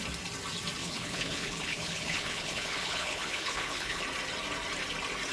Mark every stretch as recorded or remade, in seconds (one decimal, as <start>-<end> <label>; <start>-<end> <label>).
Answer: 0.0-0.8 recorded; 0.8-4.0 remade; 4.0-5.3 recorded